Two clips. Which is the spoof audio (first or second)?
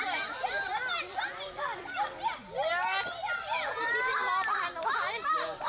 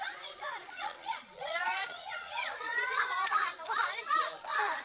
second